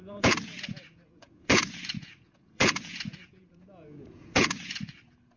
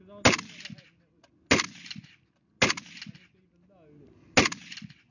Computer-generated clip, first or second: first